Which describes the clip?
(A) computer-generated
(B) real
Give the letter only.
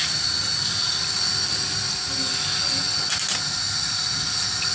B